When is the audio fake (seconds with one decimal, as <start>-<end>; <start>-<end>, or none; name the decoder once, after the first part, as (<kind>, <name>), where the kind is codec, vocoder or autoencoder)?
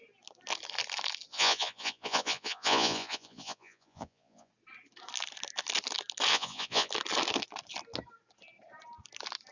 1.3-4.5 (vocoder, Vocos); 6.3-6.9